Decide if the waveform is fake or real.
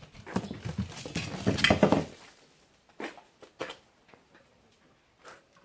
real